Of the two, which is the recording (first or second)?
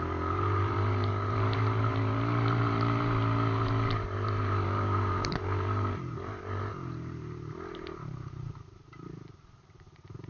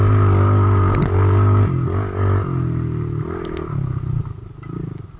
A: second